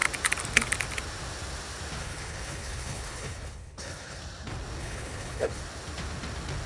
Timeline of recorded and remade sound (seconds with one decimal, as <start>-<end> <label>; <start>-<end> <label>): 0.0-2.0 recorded; 2.0-4.2 remade; 4.2-4.8 recorded; 4.8-5.6 remade; 5.6-6.7 recorded